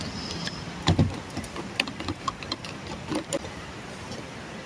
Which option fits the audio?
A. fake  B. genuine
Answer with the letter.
A